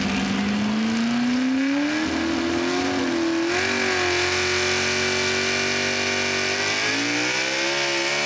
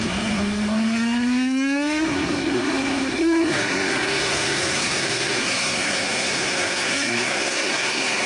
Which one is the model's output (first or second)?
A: second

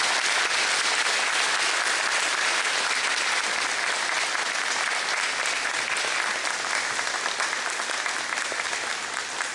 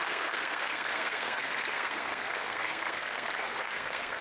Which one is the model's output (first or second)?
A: second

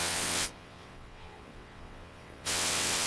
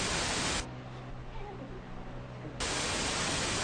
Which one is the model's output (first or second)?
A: first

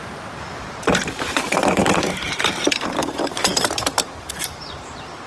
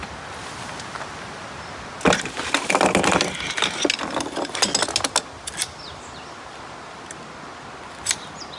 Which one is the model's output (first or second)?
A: first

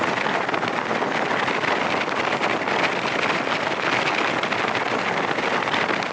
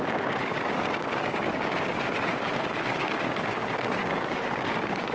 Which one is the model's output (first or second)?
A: second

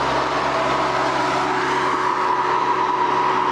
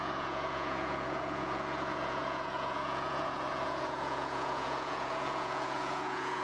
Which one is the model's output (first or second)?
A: second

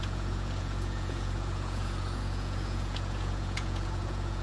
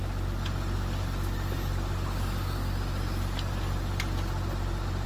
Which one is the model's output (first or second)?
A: first